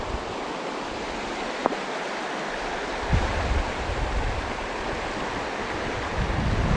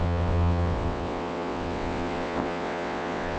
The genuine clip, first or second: first